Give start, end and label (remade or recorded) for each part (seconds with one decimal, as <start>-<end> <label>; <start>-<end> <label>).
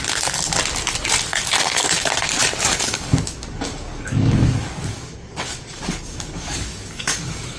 0.0-1.3 recorded; 1.3-2.1 remade; 2.1-2.7 recorded; 2.7-7.6 remade